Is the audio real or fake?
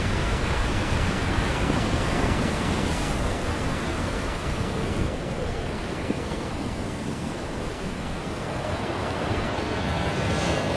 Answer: fake